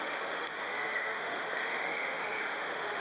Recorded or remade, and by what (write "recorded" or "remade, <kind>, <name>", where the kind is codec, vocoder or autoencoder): remade, autoencoder, DAC-VAE